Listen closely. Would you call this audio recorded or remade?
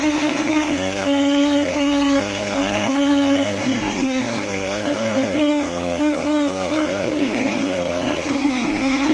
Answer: remade